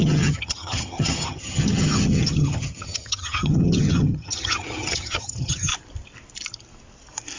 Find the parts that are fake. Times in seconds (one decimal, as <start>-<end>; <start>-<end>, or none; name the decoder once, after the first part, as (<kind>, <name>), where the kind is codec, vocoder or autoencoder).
0.0-5.7 (vocoder, HiFi-GAN)